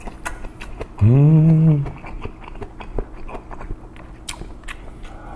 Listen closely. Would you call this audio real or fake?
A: real